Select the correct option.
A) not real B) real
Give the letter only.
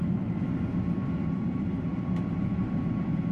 B